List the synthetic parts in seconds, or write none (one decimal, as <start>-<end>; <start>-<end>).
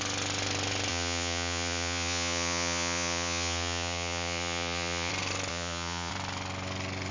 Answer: 0.9-5.1; 5.5-6.1